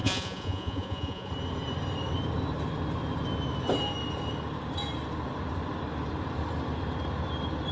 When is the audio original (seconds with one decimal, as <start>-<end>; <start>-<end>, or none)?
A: 1.3-7.7